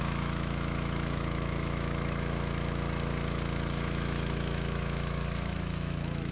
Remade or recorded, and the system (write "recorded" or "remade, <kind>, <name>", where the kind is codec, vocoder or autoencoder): remade, autoencoder, DAC-VAE